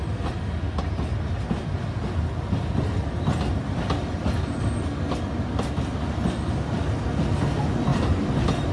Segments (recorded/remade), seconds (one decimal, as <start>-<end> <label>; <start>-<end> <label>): 0.0-8.7 recorded